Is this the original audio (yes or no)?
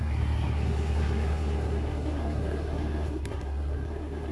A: no